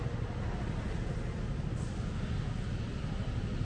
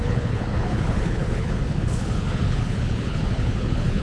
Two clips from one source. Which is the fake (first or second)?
second